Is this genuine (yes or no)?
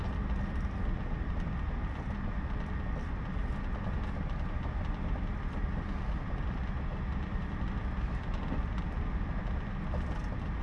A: yes